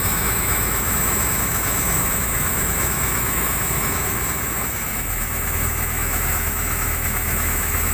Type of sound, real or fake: fake